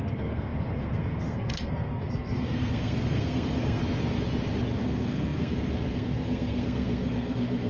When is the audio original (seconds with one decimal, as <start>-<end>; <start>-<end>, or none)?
3.8-4.8